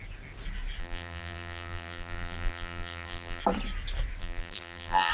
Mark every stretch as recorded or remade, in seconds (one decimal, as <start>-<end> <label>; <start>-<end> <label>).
0.0-0.8 recorded; 0.8-3.4 remade; 3.4-4.2 recorded; 4.2-5.1 remade